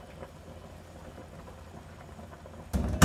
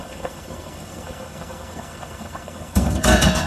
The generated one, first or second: second